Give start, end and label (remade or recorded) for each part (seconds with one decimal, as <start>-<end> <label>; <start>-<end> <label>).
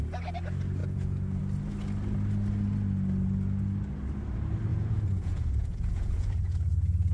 0.0-0.8 recorded; 0.8-1.4 remade; 1.4-4.7 recorded; 4.7-6.4 remade; 6.4-7.1 recorded